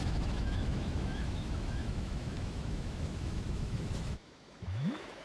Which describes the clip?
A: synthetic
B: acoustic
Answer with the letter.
A